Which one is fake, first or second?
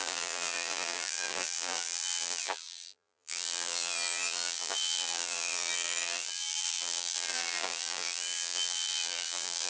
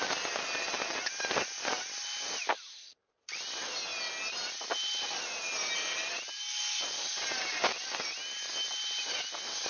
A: first